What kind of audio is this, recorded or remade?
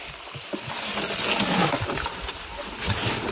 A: recorded